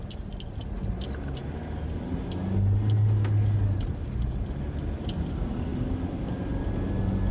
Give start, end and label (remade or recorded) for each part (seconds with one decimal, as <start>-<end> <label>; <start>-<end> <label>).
0.0-7.3 recorded